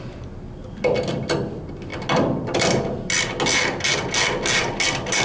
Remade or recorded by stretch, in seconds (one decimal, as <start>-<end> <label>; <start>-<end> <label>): 0.0-5.2 recorded